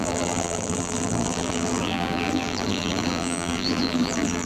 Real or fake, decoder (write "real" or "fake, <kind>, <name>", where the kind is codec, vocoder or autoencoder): fake, vocoder, BigVGAN v2